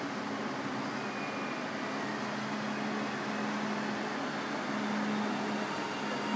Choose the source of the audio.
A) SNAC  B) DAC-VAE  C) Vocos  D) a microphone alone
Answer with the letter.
D